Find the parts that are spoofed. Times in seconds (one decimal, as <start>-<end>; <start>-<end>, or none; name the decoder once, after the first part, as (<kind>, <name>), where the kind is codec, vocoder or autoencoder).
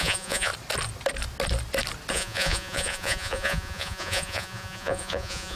0.0-0.5 (vocoder, Vocos); 2.1-5.6